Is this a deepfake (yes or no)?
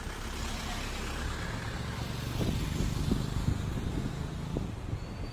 no